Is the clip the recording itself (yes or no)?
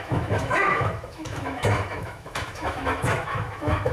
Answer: no